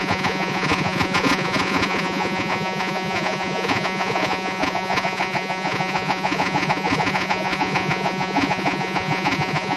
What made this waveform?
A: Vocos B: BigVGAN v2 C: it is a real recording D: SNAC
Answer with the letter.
A